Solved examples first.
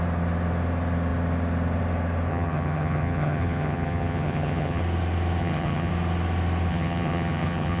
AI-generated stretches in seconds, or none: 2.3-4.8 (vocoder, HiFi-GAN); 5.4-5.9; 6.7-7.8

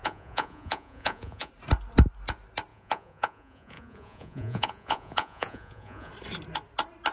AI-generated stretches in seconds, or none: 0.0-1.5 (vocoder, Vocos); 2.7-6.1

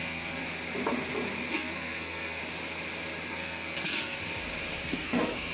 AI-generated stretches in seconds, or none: 0.0-0.4 (codec, SNAC); 1.5-2.4; 3.3-4.2; 4.8-5.5